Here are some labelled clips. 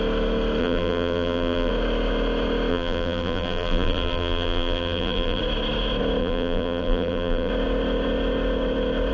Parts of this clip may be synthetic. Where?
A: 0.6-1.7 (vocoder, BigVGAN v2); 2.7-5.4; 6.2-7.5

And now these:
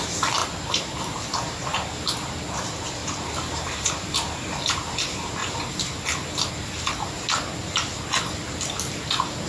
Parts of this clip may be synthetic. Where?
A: 0.4-1.9 (vocoder, BigVGAN v2); 3.0-4.9

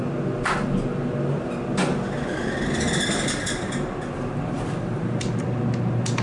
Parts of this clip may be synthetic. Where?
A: 1.9-5.6 (vocoder, BigVGAN v2)

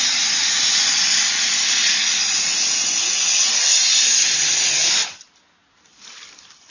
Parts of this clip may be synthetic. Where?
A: none

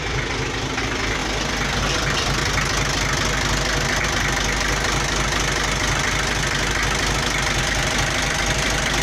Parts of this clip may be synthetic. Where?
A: 0.0-1.2 (vocoder, BigVGAN v2); 1.8-2.4; 7.6-9.0

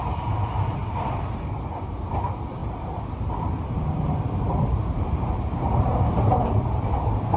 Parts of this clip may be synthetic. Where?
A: 0.8-1.5 (vocoder, BigVGAN v2); 2.6-5.4

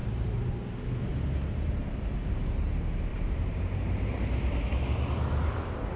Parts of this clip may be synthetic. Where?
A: 0.0-0.5 (vocoder, BigVGAN v2); 1.1-1.8; 3.1-4.8